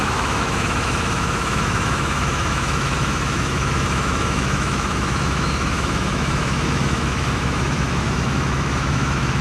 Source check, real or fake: fake